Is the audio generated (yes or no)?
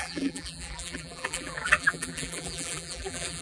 yes